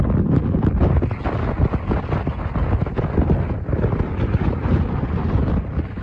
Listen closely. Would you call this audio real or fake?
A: real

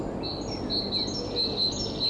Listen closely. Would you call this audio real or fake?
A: real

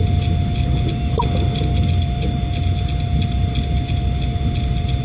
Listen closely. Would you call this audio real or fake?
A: real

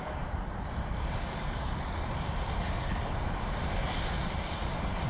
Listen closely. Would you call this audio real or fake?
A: real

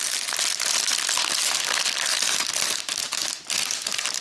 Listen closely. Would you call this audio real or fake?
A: real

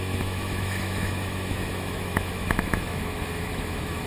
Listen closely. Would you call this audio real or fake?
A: fake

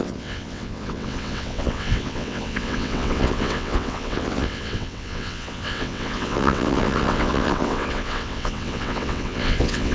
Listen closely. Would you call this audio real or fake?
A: fake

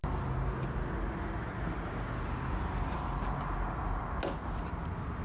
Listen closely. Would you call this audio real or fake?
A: real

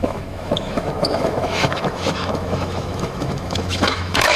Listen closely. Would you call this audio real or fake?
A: fake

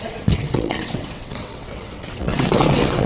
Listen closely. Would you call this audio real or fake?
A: fake